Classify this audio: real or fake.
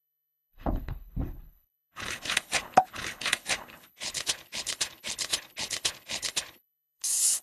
fake